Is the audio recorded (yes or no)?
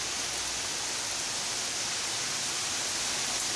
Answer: yes